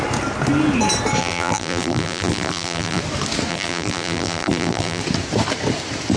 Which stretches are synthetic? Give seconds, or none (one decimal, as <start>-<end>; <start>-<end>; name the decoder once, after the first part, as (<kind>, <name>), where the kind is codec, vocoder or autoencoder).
1.2-3.0 (vocoder, BigVGAN v2); 3.5-5.0